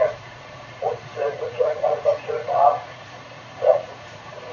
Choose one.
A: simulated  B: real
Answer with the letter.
A